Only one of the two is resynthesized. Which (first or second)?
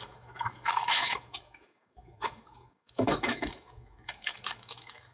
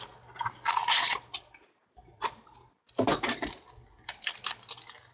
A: first